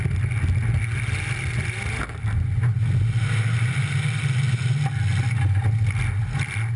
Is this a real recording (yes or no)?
yes